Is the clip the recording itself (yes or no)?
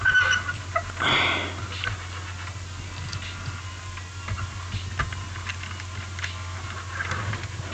yes